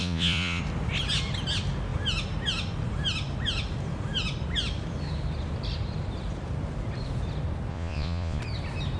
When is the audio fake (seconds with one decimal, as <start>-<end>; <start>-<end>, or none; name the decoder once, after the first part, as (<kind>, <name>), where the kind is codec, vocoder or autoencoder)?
0.0-0.6 (vocoder, Vocos); 7.7-8.4